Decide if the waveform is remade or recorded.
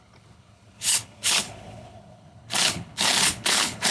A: remade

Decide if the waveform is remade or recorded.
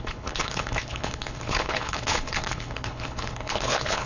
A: remade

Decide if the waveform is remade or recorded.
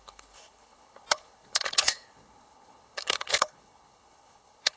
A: remade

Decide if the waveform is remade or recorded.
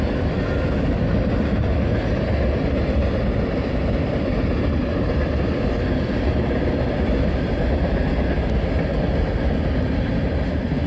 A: recorded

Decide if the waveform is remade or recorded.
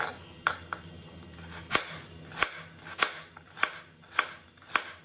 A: recorded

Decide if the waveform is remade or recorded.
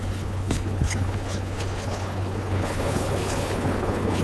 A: remade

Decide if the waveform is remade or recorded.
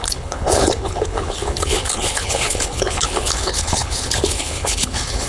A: remade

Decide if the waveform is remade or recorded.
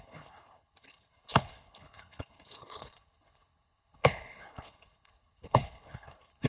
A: remade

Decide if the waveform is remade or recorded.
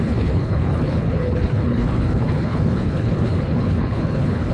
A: remade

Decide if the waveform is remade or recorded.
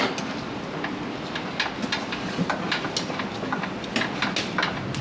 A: recorded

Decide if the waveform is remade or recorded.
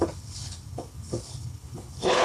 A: remade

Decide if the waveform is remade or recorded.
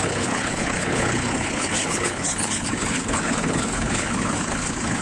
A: remade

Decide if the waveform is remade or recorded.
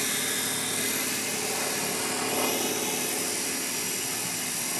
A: recorded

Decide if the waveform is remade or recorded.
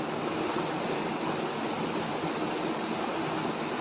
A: recorded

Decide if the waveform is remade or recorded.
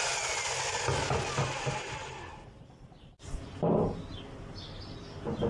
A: recorded